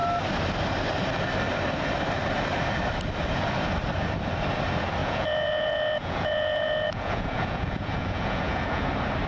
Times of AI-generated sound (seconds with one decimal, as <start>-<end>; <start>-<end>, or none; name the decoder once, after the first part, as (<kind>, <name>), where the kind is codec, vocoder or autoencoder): 5.0-8.9 (vocoder, Vocos)